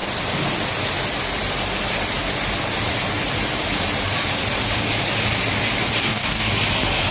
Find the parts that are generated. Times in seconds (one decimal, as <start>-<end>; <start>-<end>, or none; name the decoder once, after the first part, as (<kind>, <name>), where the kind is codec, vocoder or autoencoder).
6.0-6.5 (codec, DAC)